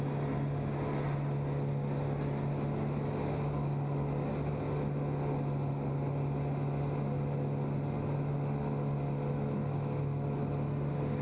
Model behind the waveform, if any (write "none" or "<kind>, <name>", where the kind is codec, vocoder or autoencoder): none